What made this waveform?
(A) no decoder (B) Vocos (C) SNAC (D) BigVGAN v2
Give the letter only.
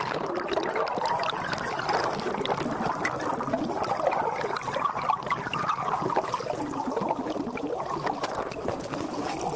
A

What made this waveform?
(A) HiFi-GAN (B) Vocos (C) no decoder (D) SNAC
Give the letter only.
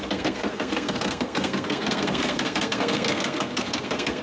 D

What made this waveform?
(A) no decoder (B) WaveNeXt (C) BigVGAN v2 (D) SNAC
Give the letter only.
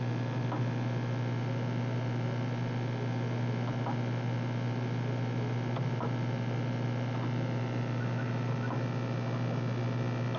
A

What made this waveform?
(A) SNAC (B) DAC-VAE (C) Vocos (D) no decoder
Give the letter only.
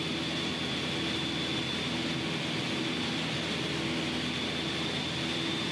D